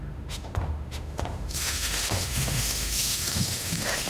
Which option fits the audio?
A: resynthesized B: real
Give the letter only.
A